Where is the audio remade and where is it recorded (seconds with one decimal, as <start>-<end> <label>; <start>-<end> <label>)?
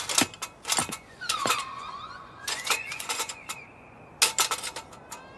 0.0-0.8 recorded; 0.8-4.0 remade; 4.0-5.4 recorded